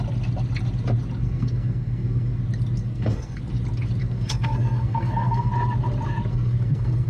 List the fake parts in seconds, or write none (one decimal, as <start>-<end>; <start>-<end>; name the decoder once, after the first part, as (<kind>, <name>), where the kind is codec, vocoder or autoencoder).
1.2-2.4 (codec, SNAC); 2.8-3.4; 4.0-5.5; 6.3-7.1